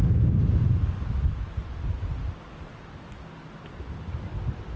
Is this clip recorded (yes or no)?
yes